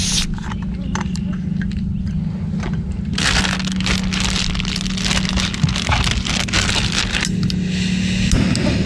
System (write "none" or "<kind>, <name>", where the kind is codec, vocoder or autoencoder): none